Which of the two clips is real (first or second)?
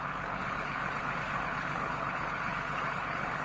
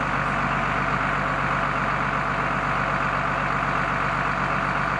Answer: second